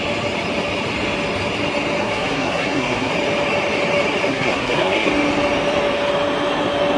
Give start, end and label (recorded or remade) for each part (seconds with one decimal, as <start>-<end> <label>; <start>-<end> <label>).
0.0-2.0 recorded; 2.0-3.1 remade; 3.1-4.3 recorded; 4.3-5.1 remade; 5.1-7.0 recorded